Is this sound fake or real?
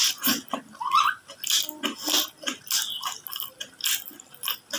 real